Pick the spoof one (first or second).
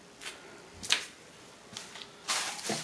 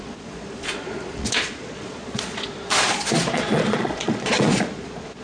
second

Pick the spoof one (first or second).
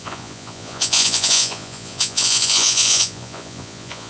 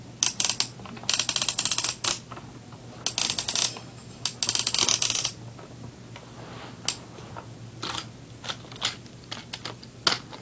first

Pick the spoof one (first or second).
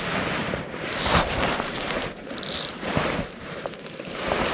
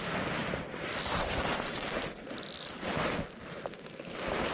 first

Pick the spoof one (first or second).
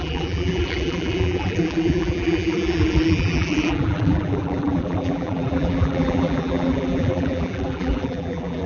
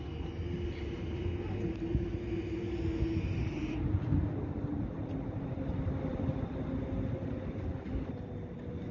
first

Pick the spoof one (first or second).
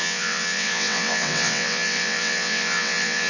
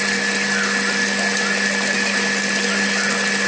first